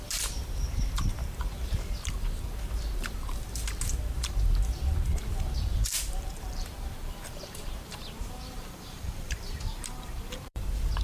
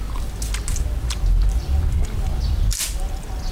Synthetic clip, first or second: first